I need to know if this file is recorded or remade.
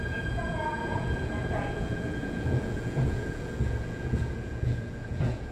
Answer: remade